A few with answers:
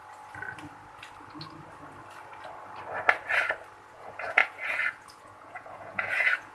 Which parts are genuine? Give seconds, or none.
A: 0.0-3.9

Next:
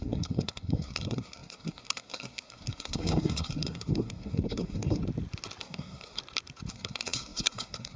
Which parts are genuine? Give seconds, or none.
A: 5.0-5.6; 6.2-6.7

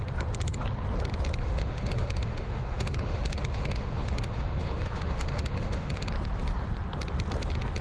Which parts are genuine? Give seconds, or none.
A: 0.0-1.4; 6.1-7.8

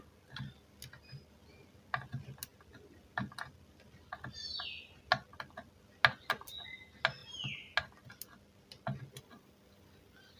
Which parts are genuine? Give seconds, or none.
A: 0.0-10.4